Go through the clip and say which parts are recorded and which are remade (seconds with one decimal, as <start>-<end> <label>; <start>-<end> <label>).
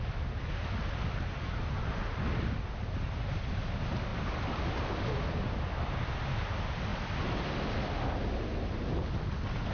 0.0-9.7 recorded